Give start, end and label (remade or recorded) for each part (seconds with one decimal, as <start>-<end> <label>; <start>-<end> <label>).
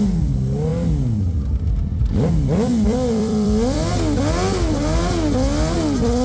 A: 0.0-2.7 recorded; 2.7-4.2 remade; 4.2-6.2 recorded